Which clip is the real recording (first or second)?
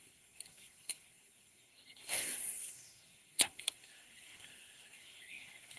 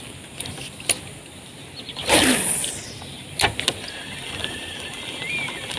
second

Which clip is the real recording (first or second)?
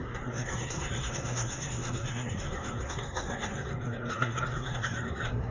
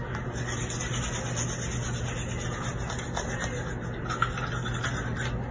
second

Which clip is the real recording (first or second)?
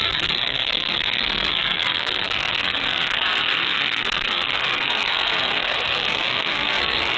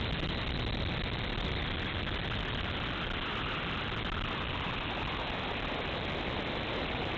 second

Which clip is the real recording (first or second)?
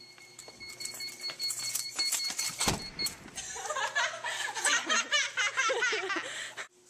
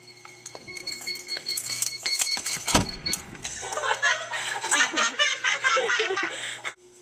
first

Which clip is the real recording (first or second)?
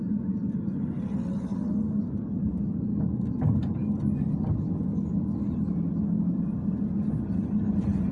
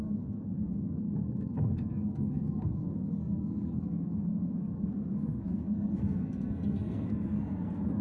first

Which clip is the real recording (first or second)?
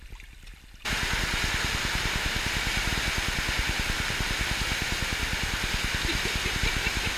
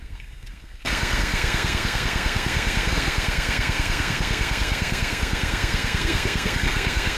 first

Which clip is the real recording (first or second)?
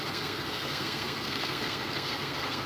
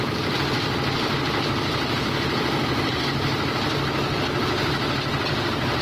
second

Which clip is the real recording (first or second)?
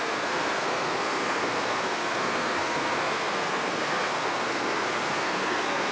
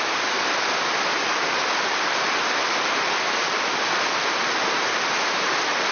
second